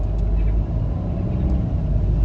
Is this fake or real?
real